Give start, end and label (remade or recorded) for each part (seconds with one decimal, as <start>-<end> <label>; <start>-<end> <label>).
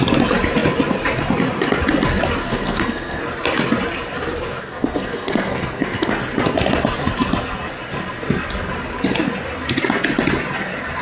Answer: 0.0-2.4 recorded; 2.4-3.2 remade; 3.2-4.6 recorded; 4.6-6.1 remade; 6.1-11.0 recorded